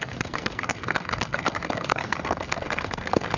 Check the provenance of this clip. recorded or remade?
remade